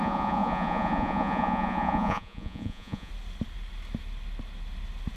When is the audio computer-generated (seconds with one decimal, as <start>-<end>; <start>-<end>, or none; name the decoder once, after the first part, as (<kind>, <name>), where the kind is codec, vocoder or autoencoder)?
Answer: 0.0-3.1 (vocoder, Vocos)